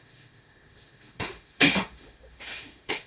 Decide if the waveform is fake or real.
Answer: fake